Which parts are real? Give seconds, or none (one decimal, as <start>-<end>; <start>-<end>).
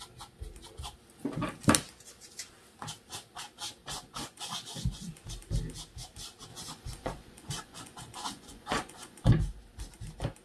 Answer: 0.0-3.8; 5.1-6.5; 9.3-10.4